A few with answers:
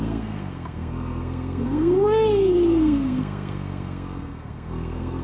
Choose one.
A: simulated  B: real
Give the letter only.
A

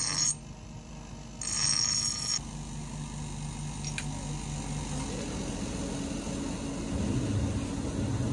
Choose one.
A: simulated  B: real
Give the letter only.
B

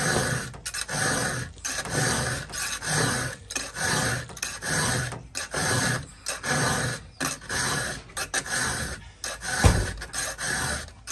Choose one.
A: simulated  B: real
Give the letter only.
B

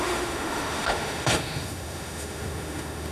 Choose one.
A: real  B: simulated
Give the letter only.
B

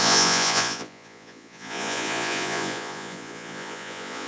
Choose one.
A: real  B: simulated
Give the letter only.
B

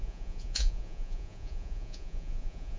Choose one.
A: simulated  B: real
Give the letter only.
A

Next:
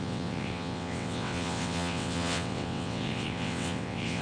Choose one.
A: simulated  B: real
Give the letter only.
A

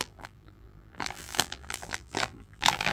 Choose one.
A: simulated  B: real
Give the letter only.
A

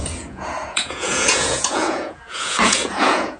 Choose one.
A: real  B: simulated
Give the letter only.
B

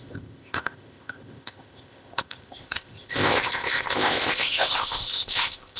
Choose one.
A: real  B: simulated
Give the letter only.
B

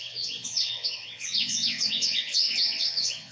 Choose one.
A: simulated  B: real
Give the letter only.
A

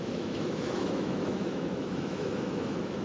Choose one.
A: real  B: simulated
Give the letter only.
B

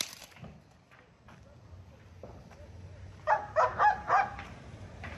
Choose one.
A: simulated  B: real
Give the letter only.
B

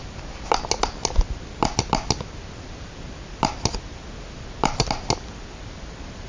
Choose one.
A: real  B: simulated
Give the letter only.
A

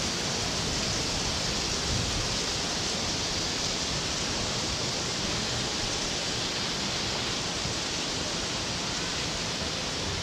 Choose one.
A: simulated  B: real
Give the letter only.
B